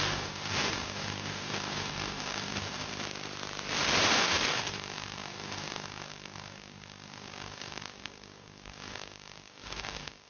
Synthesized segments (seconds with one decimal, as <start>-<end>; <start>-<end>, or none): 0.0-2.9; 4.1-10.3